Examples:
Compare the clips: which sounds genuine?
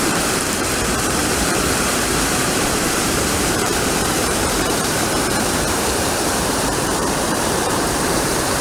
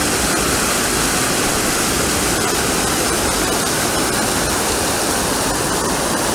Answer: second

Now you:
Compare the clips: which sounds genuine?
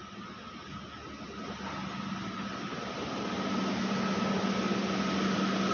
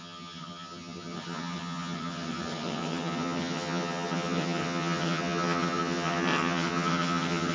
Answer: first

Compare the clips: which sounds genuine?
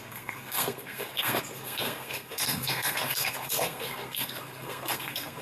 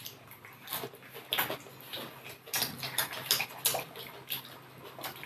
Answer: second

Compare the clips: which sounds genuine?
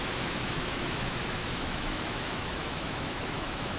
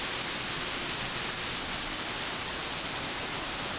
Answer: second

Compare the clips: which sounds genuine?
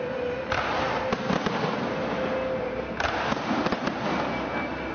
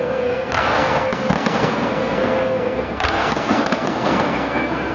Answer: first